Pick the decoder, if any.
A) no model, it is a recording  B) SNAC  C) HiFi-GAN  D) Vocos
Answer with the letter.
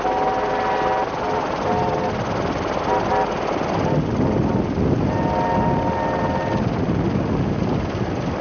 A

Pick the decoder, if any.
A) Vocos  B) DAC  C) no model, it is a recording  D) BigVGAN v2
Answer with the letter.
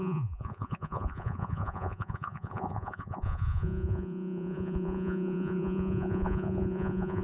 A